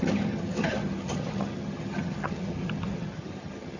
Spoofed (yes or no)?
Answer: yes